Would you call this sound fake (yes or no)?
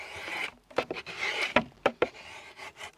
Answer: yes